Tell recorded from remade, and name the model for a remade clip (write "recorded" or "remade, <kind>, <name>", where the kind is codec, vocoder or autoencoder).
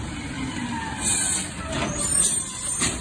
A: recorded